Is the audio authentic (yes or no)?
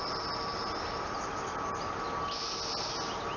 yes